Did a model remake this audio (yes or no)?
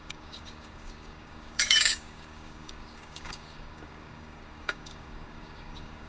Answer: yes